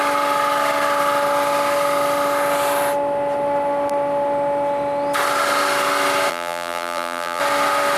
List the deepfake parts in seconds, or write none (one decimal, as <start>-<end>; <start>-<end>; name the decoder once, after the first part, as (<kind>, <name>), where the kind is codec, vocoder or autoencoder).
6.3-7.4 (vocoder, BigVGAN v2)